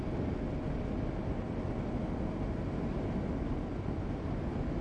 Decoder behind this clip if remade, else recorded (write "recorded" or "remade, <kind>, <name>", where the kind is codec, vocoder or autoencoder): recorded